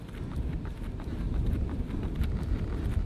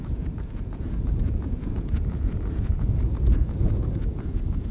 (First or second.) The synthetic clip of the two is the second